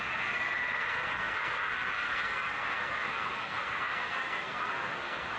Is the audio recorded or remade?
remade